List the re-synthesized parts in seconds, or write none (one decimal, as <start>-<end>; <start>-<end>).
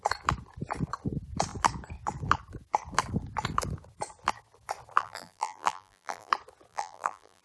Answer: 5.0-6.3; 6.7-7.4